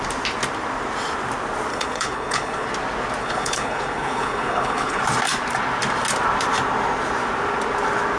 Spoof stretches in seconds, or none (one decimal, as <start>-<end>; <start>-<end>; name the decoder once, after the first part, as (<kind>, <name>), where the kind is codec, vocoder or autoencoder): 1.7-2.7 (codec, HILCodec); 3.2-5.0